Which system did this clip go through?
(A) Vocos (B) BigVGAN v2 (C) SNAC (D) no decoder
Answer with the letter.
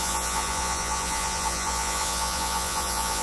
A